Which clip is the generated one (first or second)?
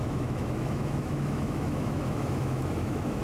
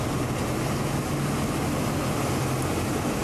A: first